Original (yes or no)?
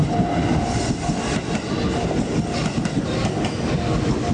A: yes